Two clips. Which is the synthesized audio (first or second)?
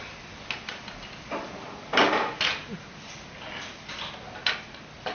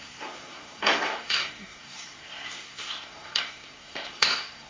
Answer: second